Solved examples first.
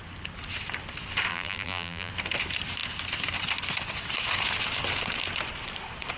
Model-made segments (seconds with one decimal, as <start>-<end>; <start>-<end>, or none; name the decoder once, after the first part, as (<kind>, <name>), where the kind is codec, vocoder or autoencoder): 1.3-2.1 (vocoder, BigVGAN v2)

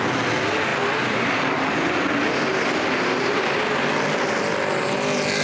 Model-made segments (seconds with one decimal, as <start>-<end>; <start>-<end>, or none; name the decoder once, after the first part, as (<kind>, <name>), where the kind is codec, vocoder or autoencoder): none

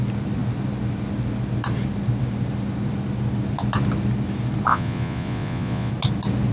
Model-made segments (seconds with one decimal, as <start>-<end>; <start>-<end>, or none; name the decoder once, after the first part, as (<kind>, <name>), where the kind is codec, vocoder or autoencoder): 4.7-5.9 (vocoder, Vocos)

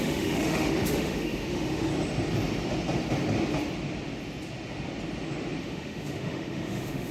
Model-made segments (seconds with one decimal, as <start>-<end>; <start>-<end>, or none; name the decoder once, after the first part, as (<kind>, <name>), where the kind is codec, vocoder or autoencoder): 0.0-1.9 (autoencoder, DAC-VAE); 5.6-7.1

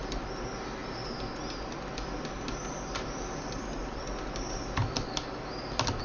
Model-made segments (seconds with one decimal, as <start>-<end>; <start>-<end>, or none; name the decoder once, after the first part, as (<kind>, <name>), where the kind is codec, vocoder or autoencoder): none

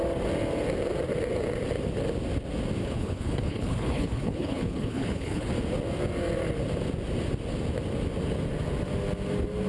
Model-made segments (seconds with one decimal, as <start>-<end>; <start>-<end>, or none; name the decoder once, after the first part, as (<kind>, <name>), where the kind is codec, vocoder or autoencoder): 2.8-5.5 (codec, HILCodec)

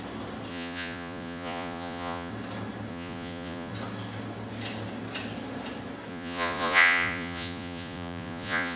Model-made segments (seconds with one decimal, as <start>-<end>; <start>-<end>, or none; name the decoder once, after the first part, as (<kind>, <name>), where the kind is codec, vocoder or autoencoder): 0.5-2.3 (vocoder, Vocos); 2.9-3.7; 6.1-8.8

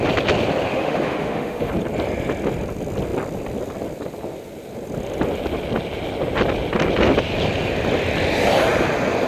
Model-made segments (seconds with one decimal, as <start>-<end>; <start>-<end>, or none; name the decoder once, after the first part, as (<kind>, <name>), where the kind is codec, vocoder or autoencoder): 0.7-1.7 (autoencoder, DAC-VAE)